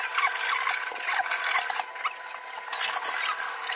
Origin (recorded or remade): recorded